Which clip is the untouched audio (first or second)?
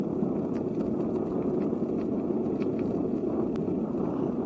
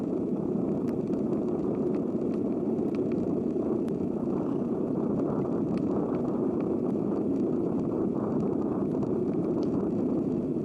first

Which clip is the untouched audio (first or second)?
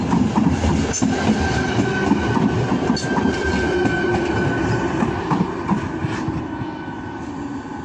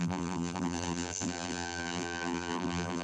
first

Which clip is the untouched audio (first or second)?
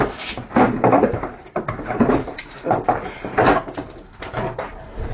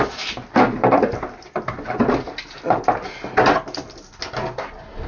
second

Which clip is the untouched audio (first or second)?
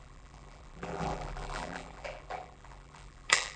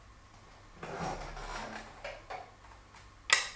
second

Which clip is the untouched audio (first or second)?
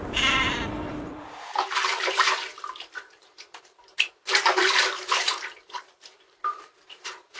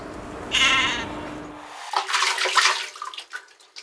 second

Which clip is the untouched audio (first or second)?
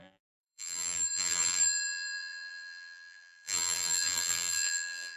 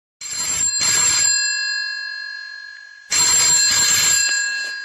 second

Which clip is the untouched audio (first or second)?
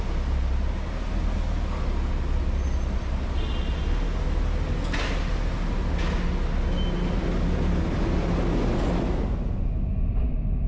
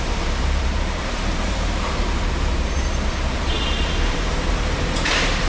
first